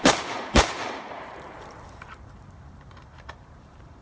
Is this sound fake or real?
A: fake